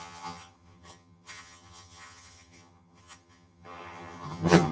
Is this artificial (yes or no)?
yes